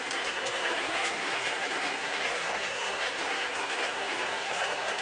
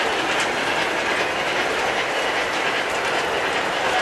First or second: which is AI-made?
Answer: first